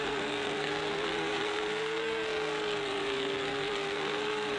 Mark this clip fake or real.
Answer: fake